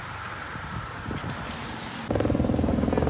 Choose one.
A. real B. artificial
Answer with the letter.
A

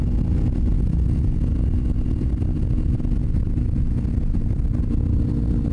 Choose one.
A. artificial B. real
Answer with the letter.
B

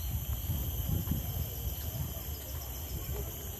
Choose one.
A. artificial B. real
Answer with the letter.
B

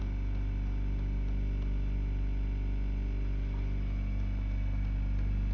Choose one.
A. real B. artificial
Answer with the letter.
A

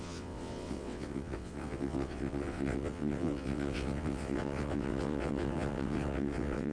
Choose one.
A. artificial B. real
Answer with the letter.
A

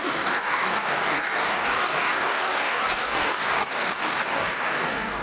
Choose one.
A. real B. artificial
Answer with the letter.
B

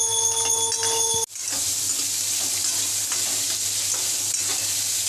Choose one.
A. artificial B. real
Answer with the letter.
B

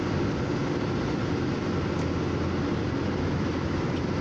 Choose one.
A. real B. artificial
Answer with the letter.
A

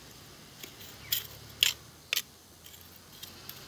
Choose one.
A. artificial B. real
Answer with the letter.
B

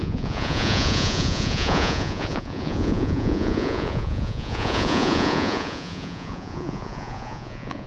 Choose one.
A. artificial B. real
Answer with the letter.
A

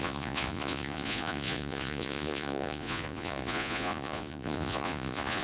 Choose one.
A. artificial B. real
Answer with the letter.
A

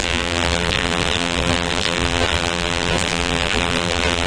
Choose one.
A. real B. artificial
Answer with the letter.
B